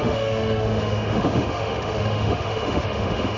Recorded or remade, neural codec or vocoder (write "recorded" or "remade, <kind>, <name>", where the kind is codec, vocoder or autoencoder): remade, autoencoder, DAC-VAE